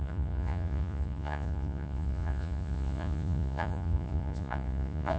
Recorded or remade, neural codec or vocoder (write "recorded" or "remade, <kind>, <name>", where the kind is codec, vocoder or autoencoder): remade, vocoder, Vocos